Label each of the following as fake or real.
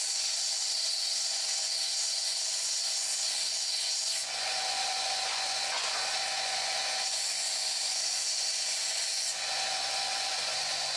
fake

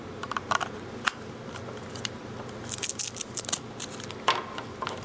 real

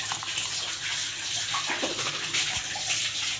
real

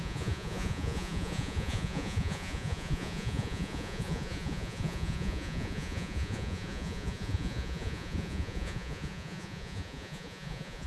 fake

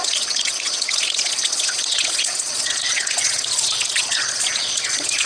fake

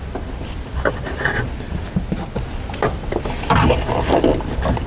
real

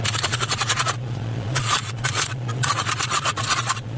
fake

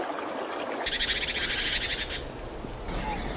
real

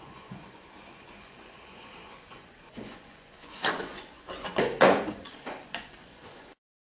fake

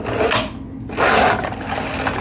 real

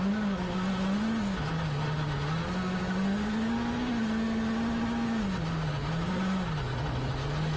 real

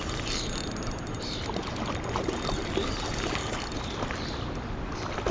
real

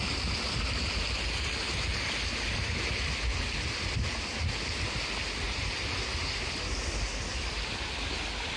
real